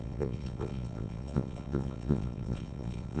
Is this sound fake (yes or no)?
yes